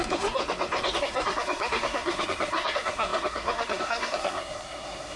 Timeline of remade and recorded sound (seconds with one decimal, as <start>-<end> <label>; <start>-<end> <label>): 0.0-0.4 remade; 0.4-1.0 recorded; 1.0-5.2 remade